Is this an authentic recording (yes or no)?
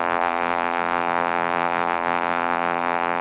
no